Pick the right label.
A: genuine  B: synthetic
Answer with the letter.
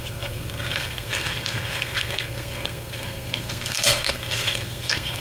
B